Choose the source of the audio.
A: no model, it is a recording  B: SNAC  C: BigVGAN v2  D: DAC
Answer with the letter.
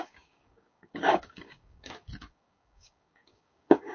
D